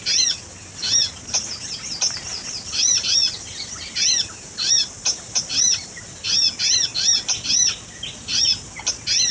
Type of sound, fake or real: real